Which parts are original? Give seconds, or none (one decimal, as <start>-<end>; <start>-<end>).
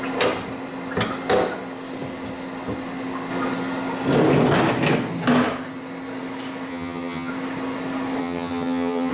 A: 0.0-6.7; 7.3-8.2